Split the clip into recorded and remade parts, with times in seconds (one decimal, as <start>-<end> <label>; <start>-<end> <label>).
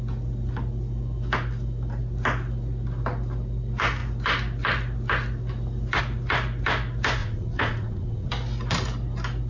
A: 0.0-7.2 recorded; 7.2-8.3 remade; 8.3-9.5 recorded